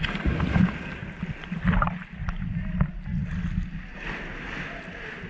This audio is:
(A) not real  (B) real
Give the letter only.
B